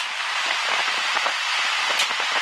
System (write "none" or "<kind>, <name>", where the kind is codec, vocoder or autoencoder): vocoder, BigVGAN v2